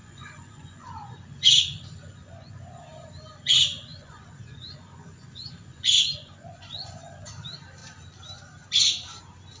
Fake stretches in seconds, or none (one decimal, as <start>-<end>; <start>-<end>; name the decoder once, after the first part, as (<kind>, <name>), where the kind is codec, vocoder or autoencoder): 0.0-2.6 (vocoder, Vocos); 3.9-7.3